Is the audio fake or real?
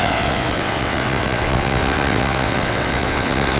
fake